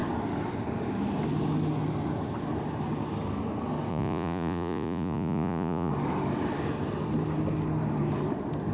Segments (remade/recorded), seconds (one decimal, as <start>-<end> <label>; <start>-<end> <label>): 0.0-3.9 recorded; 3.9-5.9 remade; 5.9-8.7 recorded